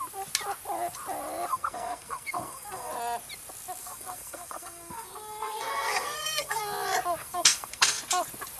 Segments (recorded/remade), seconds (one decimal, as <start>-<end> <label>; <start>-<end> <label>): 0.0-1.5 recorded; 1.5-2.9 remade; 2.9-3.8 recorded; 3.8-6.6 remade; 6.6-7.2 recorded; 7.2-8.0 remade; 8.0-8.6 recorded